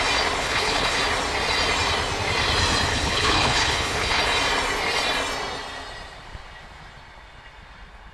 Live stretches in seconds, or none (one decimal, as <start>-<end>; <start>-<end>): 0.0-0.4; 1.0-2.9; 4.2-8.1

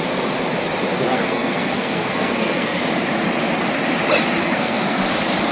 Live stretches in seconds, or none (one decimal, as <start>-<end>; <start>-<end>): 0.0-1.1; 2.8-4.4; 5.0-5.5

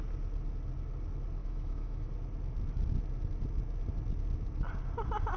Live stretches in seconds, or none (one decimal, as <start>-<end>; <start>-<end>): 0.0-1.4; 2.1-5.4